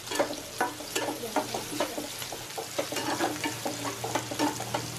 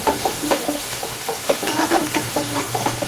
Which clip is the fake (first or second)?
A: second